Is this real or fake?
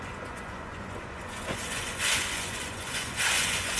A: fake